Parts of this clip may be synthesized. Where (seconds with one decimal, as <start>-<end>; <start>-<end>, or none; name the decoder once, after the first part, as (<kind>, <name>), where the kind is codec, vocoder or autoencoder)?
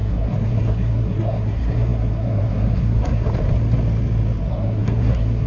0.0-3.3 (codec, SNAC); 4.5-5.5